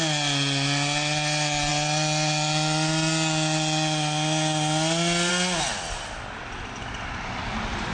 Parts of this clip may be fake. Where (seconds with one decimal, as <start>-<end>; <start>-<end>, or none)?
none